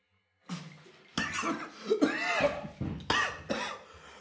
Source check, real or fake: real